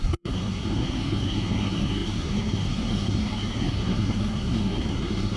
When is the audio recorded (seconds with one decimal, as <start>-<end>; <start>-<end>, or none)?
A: none